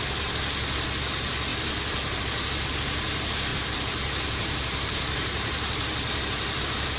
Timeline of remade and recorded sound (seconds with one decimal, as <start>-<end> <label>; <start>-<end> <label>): 0.0-1.5 recorded; 1.5-2.2 remade; 2.2-3.5 recorded; 3.5-6.6 remade; 6.6-7.0 recorded